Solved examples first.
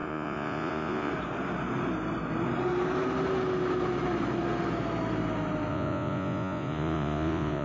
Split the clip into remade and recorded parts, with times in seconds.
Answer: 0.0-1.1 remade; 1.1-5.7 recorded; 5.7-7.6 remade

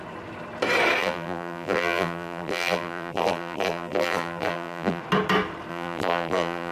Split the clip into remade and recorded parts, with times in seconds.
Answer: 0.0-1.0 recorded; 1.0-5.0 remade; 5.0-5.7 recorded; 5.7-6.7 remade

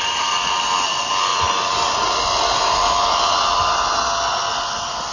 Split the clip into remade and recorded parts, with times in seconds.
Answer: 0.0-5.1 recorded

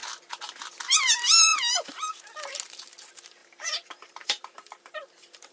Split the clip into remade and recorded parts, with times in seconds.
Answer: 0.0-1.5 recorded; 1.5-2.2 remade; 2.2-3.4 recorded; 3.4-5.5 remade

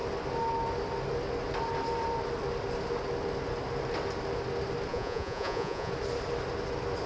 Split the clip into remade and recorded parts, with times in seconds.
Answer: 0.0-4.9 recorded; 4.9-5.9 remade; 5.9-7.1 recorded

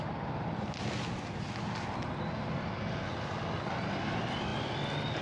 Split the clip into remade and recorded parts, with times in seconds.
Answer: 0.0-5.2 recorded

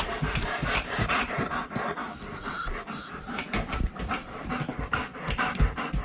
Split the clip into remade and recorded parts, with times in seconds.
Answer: 0.0-0.6 recorded; 0.6-1.4 remade; 1.4-2.0 recorded; 2.0-3.7 remade; 3.7-5.1 recorded; 5.1-5.6 remade; 5.6-6.0 recorded

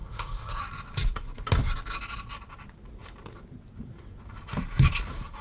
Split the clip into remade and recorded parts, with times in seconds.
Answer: 0.0-0.6 remade; 0.6-5.4 recorded